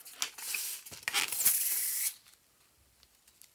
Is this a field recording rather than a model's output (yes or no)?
yes